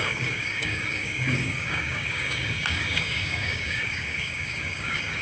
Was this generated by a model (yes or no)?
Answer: yes